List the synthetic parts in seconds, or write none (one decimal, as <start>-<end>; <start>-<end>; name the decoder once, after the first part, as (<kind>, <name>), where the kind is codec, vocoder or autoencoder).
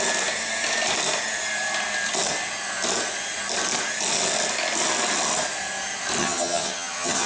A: 6.2-7.3 (vocoder, HiFi-GAN)